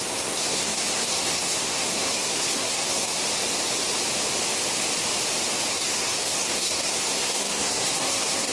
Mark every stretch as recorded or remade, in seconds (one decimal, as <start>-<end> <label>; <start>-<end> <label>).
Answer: 0.0-3.2 remade; 3.2-5.7 recorded; 5.7-8.5 remade